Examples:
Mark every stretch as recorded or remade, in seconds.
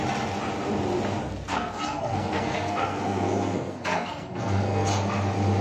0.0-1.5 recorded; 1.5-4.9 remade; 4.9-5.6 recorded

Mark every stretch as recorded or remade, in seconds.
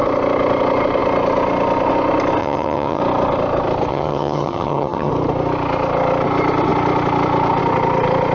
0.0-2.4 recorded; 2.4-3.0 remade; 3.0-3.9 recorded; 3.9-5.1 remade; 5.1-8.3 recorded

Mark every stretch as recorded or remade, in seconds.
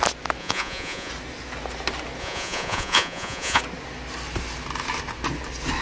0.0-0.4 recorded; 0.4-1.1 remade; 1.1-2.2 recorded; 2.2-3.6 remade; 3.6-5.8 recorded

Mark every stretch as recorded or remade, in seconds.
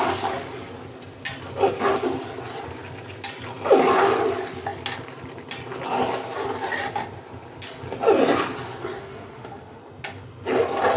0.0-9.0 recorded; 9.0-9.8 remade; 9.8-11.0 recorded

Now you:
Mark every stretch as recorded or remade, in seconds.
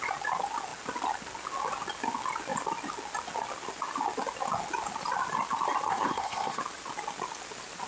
0.0-5.9 recorded; 5.9-6.6 remade; 6.6-7.9 recorded